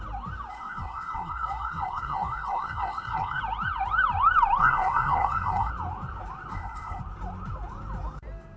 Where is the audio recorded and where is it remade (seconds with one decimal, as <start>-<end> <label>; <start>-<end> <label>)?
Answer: 0.0-0.5 recorded; 0.5-3.4 remade; 3.4-4.6 recorded; 4.6-5.7 remade; 5.7-6.5 recorded; 6.5-7.0 remade; 7.0-8.6 recorded